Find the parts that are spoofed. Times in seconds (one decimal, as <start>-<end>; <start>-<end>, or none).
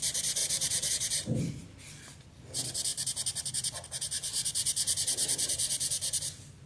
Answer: 0.4-0.9